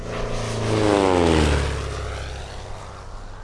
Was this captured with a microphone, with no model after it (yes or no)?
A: yes